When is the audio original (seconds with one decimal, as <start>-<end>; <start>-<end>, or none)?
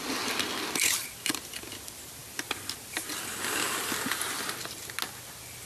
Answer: 0.0-5.7